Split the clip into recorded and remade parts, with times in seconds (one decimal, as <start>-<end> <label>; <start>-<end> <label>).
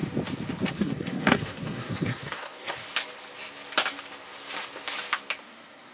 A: 0.0-0.7 recorded; 0.7-2.8 remade; 2.8-5.4 recorded; 5.4-5.9 remade